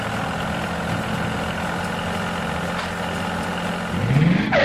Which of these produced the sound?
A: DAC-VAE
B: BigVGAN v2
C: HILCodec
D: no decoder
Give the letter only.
D